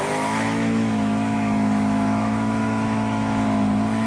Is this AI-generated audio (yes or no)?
yes